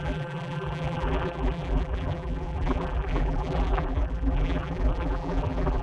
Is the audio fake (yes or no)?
yes